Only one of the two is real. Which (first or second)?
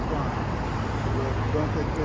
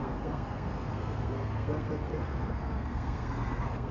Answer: first